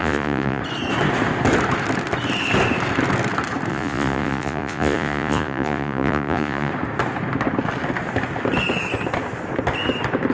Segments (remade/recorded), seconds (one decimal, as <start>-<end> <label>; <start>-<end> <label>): 0.0-0.6 remade; 0.6-3.7 recorded; 3.7-6.7 remade; 6.7-10.3 recorded

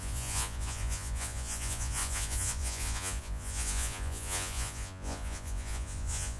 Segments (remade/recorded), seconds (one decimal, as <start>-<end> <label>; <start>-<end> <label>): 0.0-6.4 remade